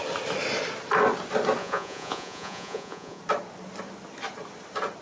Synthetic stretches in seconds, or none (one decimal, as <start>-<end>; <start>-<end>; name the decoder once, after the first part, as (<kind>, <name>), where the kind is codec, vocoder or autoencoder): 1.6-3.2 (vocoder, Vocos)